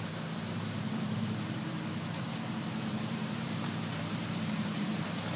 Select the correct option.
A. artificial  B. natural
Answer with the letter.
A